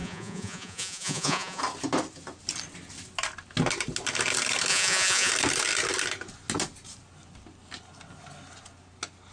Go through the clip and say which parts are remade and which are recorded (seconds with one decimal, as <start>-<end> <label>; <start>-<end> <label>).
0.0-1.6 remade; 1.6-4.7 recorded; 4.7-5.3 remade; 5.3-9.3 recorded